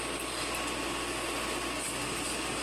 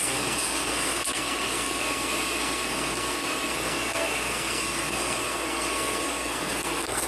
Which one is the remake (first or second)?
second